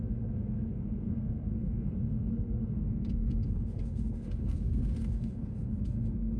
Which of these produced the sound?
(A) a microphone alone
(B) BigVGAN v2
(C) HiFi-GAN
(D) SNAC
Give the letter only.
D